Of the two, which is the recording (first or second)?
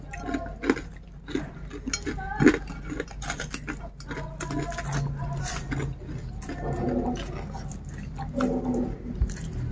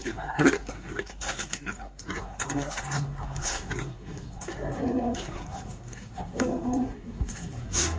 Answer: first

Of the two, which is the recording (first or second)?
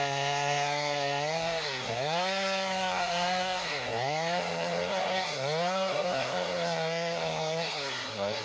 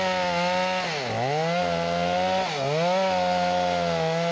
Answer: second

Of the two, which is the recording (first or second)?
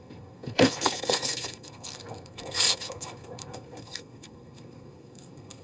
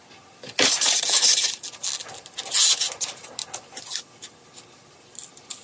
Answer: second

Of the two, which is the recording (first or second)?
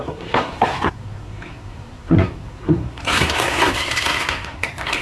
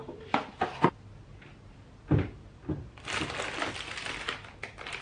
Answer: second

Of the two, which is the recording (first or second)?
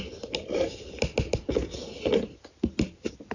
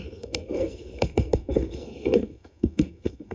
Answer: first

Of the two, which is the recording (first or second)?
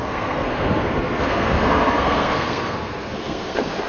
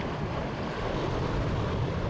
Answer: second